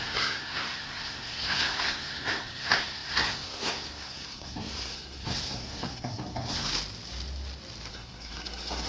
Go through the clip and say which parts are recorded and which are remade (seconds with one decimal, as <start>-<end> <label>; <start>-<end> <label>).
0.0-6.7 remade; 6.7-7.9 recorded; 7.9-8.9 remade